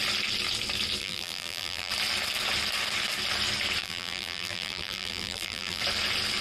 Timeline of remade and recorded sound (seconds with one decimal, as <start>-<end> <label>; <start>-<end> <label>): 0.0-1.0 recorded; 1.0-1.9 remade; 1.9-3.8 recorded; 3.8-5.8 remade; 5.8-6.4 recorded

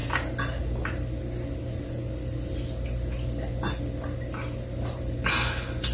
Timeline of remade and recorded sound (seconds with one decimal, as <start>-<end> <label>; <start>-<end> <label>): 0.0-5.9 recorded

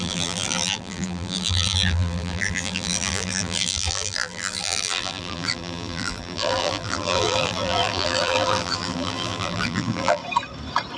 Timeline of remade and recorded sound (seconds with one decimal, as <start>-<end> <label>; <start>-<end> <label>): 0.0-10.2 remade; 10.2-11.0 recorded

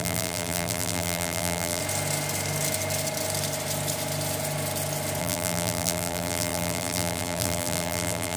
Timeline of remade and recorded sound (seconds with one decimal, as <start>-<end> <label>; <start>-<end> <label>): 0.0-1.8 remade; 1.8-5.2 recorded; 5.2-8.4 remade

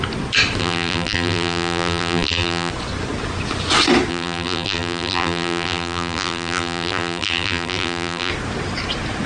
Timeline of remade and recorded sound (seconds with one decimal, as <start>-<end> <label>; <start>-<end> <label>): 0.0-0.6 recorded; 0.6-2.7 remade; 2.7-4.1 recorded; 4.1-8.3 remade; 8.3-9.3 recorded

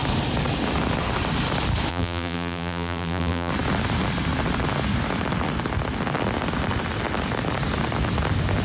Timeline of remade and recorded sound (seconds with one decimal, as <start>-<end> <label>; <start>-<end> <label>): 0.0-1.9 recorded; 1.9-3.5 remade; 3.5-8.6 recorded

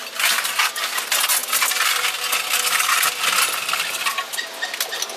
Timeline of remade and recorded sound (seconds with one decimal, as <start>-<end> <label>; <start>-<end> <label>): 0.0-5.2 recorded